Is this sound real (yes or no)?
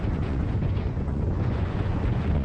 no